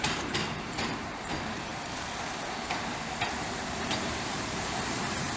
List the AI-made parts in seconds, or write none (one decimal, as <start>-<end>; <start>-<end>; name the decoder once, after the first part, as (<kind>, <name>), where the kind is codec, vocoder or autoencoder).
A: 0.0-5.4 (vocoder, BigVGAN v2)